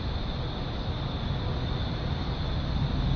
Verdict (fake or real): real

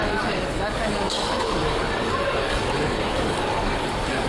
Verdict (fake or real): fake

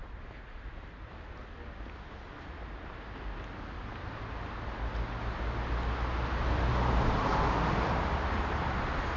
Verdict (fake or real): real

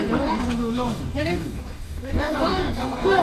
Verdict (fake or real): fake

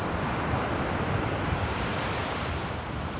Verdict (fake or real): real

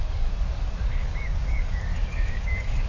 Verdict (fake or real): fake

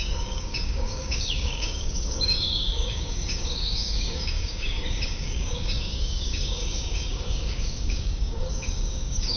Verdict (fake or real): fake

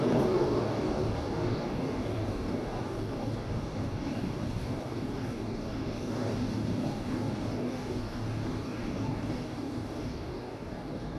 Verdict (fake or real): fake